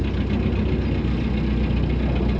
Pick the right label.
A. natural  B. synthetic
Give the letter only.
A